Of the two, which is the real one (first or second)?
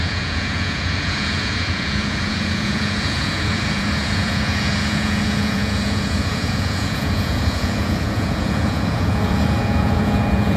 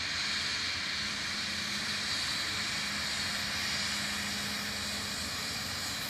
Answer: second